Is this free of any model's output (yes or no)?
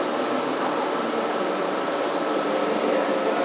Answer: yes